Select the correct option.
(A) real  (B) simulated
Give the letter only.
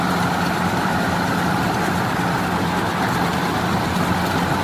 A